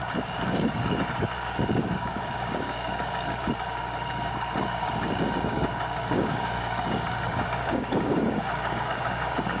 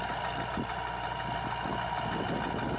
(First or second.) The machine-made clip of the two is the first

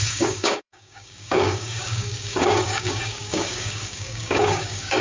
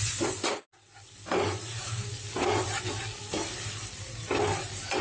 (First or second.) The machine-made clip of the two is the first